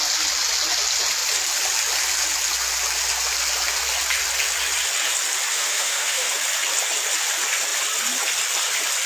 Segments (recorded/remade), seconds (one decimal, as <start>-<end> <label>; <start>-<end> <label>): 0.0-5.5 recorded; 5.5-6.3 remade; 6.3-9.1 recorded